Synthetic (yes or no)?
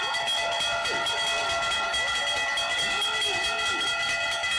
no